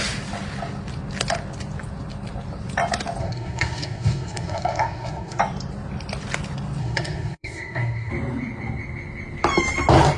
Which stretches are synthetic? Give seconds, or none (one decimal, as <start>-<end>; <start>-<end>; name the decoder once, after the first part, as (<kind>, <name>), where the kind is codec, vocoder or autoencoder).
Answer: 3.2-5.4 (codec, SNAC); 6.8-8.1